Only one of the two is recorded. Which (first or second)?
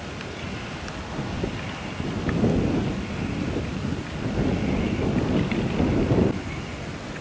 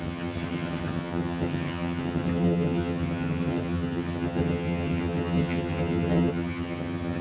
first